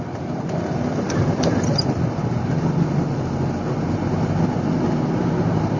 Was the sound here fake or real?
real